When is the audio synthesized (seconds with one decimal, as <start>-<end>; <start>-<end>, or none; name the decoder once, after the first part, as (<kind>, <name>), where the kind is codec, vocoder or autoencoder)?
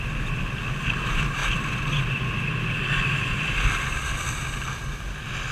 none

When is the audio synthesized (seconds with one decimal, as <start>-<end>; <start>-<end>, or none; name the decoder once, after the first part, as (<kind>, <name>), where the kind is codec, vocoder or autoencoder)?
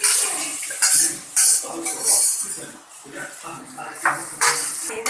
none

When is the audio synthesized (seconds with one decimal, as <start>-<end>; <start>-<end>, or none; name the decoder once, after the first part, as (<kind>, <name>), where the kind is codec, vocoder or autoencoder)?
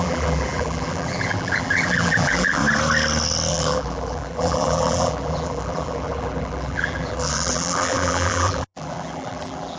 0.0-2.6 (vocoder, BigVGAN v2); 3.5-9.8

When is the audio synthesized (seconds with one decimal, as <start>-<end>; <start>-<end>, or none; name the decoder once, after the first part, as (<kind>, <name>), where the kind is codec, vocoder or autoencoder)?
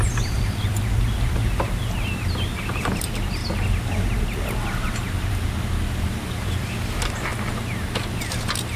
0.0-3.4 (vocoder, BigVGAN v2); 6.0-8.8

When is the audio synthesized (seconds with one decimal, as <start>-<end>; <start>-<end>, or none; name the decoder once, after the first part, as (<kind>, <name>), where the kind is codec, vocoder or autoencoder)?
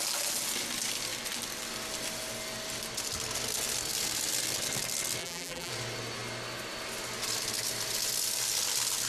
5.2-5.7 (vocoder, BigVGAN v2)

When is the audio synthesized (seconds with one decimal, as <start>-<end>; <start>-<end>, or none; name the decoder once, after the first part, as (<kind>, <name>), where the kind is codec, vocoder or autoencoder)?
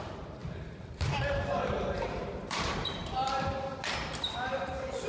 0.0-3.0 (vocoder, BigVGAN v2); 4.0-5.1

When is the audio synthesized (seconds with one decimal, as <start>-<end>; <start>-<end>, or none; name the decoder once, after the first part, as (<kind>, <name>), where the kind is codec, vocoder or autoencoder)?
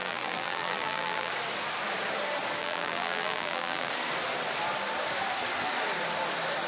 0.0-1.3 (vocoder, BigVGAN v2); 2.6-3.9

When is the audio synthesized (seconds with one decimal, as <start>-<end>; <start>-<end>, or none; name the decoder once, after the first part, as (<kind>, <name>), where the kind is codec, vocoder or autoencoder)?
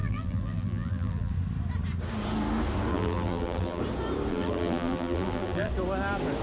0.0-1.3 (vocoder, BigVGAN v2); 2.9-3.8; 4.3-5.7